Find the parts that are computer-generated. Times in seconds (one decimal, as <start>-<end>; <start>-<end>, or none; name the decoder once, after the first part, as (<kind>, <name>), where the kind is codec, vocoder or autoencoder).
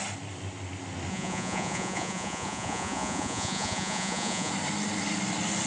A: 1.1-4.5 (vocoder, Vocos)